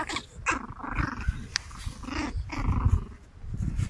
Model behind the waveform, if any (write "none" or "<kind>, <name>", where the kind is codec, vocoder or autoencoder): none